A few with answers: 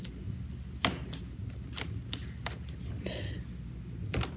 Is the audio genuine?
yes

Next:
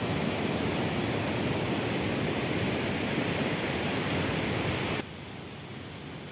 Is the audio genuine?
yes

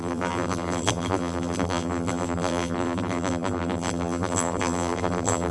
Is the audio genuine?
no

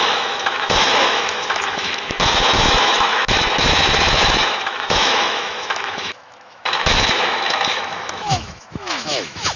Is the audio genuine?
no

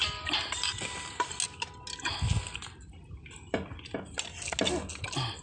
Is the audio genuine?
yes